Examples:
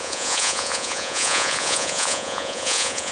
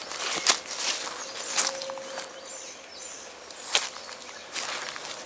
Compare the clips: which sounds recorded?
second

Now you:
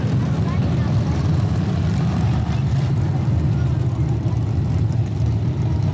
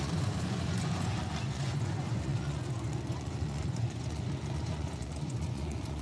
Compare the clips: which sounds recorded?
first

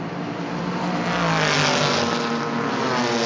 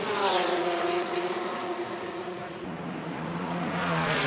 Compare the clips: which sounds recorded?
first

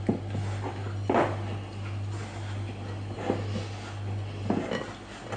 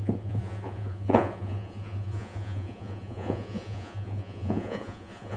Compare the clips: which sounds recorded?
first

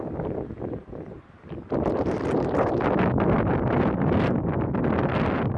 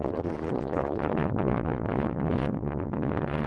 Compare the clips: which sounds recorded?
first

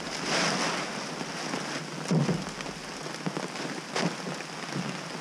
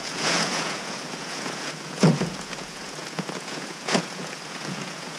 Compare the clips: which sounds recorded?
first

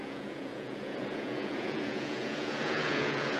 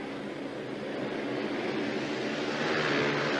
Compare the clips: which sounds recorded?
second